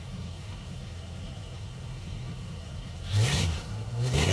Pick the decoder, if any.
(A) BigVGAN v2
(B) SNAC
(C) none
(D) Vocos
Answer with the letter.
B